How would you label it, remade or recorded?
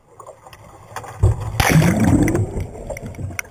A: recorded